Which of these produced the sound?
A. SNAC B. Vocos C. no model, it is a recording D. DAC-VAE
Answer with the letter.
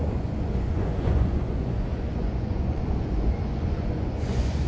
B